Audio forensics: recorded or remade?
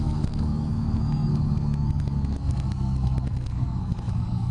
remade